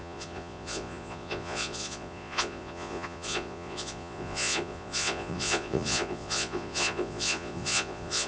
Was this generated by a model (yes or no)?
yes